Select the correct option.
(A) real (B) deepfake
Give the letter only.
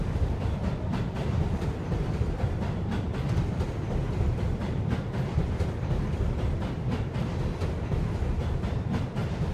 B